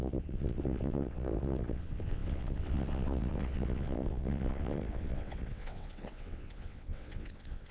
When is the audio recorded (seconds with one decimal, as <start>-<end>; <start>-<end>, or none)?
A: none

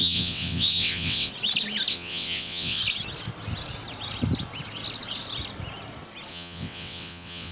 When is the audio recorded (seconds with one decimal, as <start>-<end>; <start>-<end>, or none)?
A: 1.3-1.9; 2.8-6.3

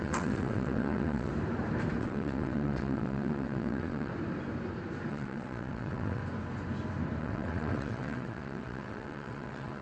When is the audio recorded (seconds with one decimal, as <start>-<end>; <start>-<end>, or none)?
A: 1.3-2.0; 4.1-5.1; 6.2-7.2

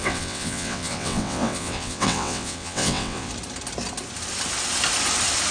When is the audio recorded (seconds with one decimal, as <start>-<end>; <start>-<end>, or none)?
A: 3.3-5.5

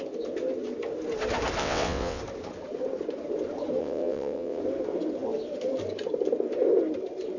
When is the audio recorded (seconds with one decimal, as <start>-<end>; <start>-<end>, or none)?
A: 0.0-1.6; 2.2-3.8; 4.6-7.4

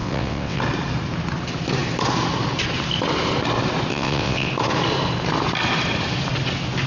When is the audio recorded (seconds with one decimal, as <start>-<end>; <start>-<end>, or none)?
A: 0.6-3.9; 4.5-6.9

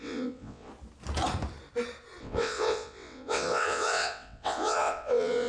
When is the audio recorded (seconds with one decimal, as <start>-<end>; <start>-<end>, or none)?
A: 0.7-2.2